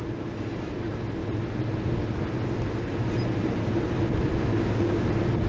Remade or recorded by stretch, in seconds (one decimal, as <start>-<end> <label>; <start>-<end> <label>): 0.0-5.5 recorded